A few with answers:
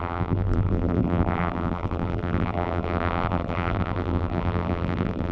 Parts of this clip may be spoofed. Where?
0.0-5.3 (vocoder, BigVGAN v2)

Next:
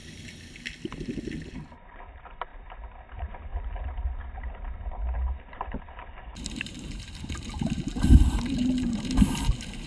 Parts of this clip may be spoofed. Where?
1.5-2.5 (vocoder, BigVGAN v2); 3.1-3.5; 4.4-9.9

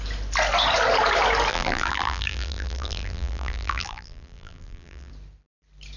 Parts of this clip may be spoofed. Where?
1.5-5.1 (vocoder, BigVGAN v2)